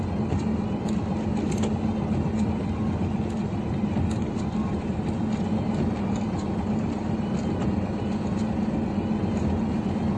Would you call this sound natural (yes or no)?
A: yes